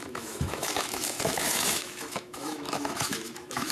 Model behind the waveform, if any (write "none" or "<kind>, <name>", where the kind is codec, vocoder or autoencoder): autoencoder, DAC-VAE